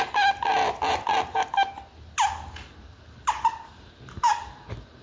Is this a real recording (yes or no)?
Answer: yes